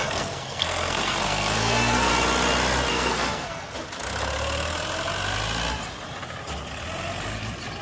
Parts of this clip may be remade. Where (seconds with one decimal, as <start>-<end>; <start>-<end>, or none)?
0.0-2.1; 2.9-3.7